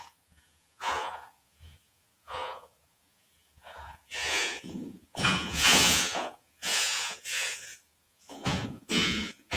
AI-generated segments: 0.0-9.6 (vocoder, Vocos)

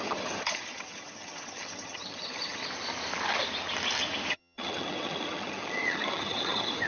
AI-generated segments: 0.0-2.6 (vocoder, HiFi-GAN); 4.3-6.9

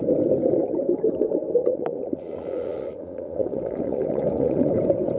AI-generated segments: 1.6-4.7 (vocoder, Vocos)